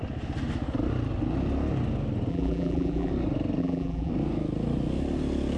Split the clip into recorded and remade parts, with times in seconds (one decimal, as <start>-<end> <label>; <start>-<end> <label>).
0.0-2.3 recorded; 2.3-3.1 remade; 3.1-3.6 recorded; 3.6-4.1 remade; 4.1-5.6 recorded